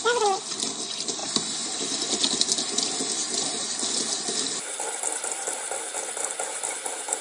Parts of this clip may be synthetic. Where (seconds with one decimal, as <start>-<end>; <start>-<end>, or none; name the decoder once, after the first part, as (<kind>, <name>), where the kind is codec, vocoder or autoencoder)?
none